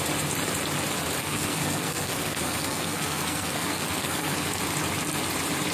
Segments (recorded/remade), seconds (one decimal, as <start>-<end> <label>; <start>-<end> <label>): 0.0-1.2 recorded; 1.2-4.6 remade; 4.6-5.7 recorded

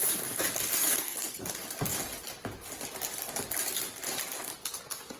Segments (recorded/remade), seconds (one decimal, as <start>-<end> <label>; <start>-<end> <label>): 0.0-0.7 recorded; 0.7-1.4 remade; 1.4-5.2 recorded

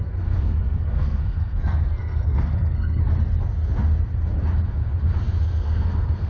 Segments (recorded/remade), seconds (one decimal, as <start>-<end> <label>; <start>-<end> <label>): 0.0-3.0 remade; 3.0-5.4 recorded; 5.4-6.3 remade

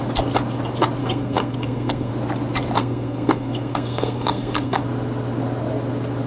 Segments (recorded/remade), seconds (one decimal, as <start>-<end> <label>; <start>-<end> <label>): 0.0-1.0 recorded; 1.0-2.1 remade; 2.1-2.8 recorded; 2.8-4.8 remade; 4.8-6.3 recorded

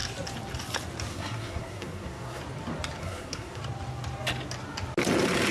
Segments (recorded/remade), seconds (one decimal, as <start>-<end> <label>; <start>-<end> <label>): 0.0-1.1 recorded; 1.1-2.4 remade; 2.4-3.0 recorded; 3.0-3.6 remade; 3.6-5.5 recorded

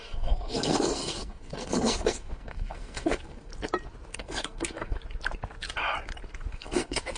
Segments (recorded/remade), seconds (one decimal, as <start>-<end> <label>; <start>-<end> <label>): 0.0-3.5 remade; 3.5-4.1 recorded; 4.1-5.0 remade; 5.0-6.5 recorded; 6.5-7.2 remade

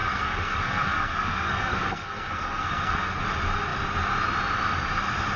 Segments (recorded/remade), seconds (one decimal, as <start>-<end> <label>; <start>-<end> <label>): 0.0-3.2 remade; 3.2-5.4 recorded

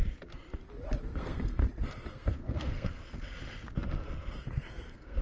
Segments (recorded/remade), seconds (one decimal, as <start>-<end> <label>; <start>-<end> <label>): 0.0-1.0 recorded; 1.0-1.6 remade; 1.6-2.1 recorded; 2.1-3.0 remade; 3.0-4.5 recorded; 4.5-5.2 remade